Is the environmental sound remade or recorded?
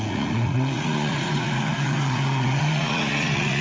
remade